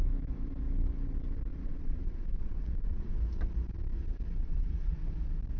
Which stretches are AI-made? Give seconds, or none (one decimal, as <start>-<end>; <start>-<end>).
1.5-3.1; 4.4-5.0

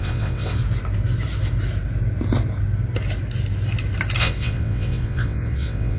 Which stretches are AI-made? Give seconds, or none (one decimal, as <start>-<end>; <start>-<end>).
0.0-0.6; 4.2-6.0

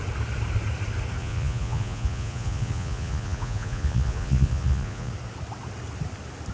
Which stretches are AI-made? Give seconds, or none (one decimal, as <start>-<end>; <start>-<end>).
1.2-5.1

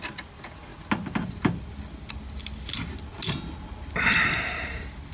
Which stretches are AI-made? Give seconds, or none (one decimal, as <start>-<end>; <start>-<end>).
none

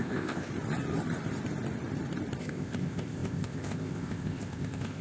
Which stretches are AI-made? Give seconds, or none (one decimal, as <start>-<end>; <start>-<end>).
0.0-0.5; 2.4-5.0

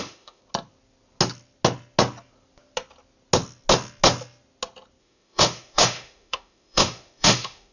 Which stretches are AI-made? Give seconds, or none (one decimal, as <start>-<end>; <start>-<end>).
0.0-0.4; 5.0-7.7

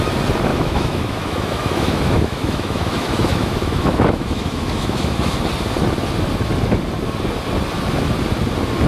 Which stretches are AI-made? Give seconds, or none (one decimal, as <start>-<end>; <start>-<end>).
0.5-5.4